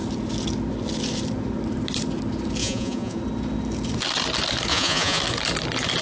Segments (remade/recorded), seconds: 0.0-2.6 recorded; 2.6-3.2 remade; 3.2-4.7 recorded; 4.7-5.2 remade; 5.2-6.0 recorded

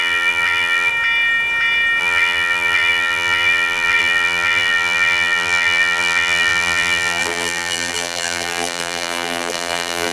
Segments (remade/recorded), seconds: 0.0-0.9 remade; 0.9-2.0 recorded; 2.0-10.1 remade

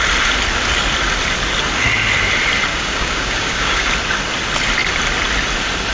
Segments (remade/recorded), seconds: 0.0-2.7 recorded; 2.7-3.9 remade; 3.9-5.9 recorded

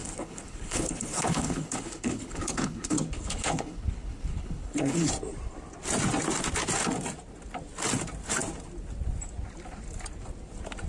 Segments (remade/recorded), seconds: 0.0-5.1 remade; 5.1-10.9 recorded

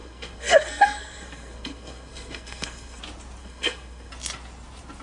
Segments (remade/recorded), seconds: 0.0-3.0 remade; 3.0-3.4 recorded; 3.4-4.1 remade; 4.1-5.0 recorded